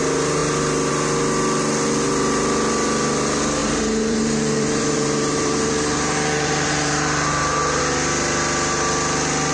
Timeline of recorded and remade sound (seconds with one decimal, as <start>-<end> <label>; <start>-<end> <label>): 0.0-3.6 recorded; 3.6-7.8 remade; 7.8-9.5 recorded